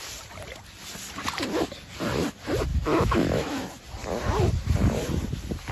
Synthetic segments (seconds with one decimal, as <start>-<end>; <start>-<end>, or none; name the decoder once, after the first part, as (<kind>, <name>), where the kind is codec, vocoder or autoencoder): 2.7-3.7 (autoencoder, DAC-VAE)